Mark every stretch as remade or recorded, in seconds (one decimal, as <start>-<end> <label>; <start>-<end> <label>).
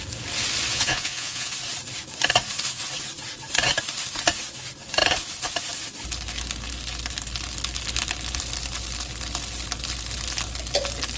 0.0-0.7 recorded; 0.7-1.5 remade; 1.5-11.2 recorded